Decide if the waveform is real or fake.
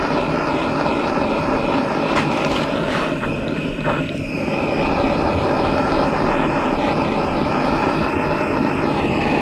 real